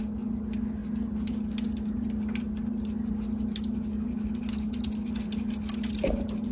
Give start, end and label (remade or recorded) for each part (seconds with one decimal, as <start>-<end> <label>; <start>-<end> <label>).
0.0-6.5 recorded